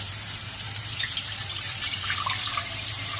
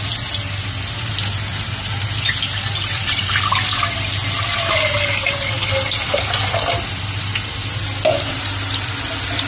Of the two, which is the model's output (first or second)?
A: first